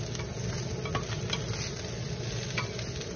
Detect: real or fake real